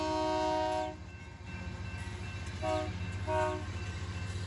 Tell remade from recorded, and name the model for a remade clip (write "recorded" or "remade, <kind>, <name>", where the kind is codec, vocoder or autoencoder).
recorded